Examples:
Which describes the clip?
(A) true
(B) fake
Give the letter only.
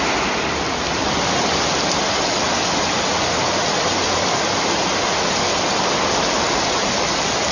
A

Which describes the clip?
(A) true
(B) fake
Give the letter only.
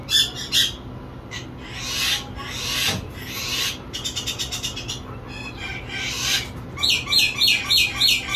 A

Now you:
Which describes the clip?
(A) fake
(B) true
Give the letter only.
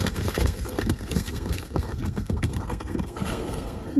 A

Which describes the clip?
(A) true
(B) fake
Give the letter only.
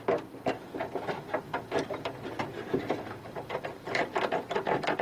B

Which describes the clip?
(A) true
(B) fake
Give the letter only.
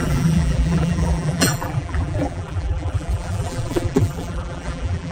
B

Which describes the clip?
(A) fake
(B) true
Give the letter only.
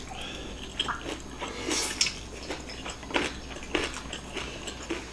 B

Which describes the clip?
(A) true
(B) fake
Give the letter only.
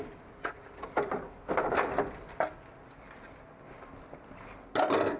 A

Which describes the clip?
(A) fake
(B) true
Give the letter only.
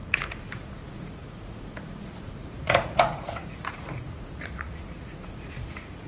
A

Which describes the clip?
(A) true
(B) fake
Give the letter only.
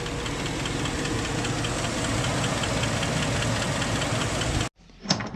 A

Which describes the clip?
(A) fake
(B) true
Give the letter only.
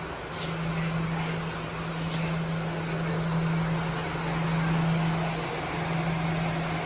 B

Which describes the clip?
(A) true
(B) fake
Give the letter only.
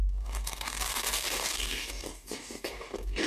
B